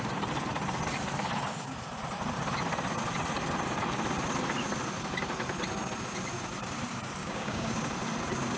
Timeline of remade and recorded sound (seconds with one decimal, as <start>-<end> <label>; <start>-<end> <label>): 0.0-7.2 recorded; 7.2-7.7 remade; 7.7-8.6 recorded